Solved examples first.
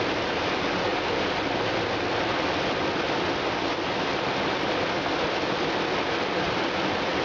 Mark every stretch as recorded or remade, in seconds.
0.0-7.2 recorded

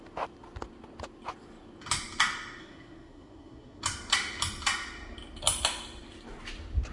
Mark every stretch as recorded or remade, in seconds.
0.0-2.6 recorded; 2.6-3.8 remade; 3.8-6.9 recorded